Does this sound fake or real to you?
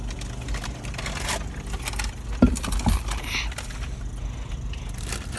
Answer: real